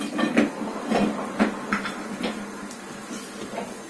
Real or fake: real